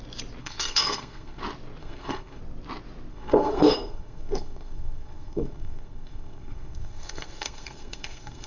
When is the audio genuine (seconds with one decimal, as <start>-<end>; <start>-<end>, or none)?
0.0-0.4; 1.4-1.8; 2.4-3.1